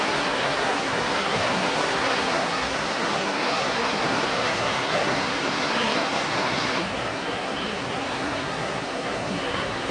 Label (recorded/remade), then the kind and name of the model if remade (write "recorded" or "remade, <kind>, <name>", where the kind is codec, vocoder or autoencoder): remade, codec, SNAC